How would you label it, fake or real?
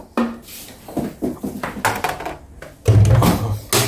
real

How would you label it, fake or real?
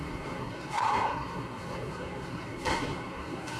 fake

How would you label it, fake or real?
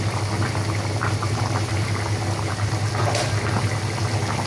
real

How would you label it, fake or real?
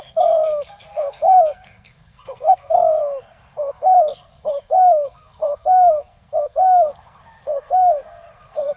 fake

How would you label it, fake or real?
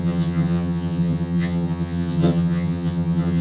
fake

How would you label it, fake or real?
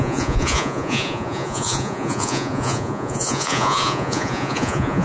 fake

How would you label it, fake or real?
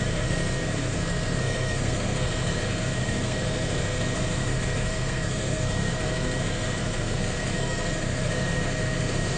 fake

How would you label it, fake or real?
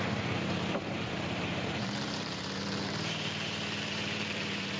fake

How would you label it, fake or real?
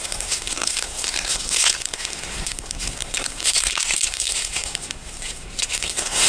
fake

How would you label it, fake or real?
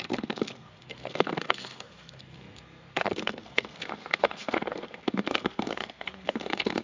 fake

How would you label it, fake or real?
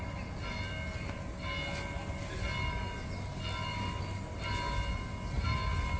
real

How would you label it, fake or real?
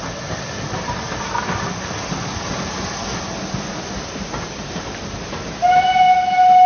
real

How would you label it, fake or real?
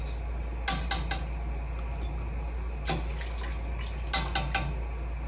real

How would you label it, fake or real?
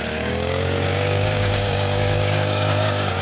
fake